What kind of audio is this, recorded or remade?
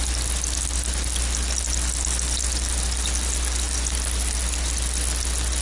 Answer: recorded